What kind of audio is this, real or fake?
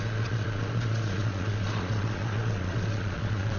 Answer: fake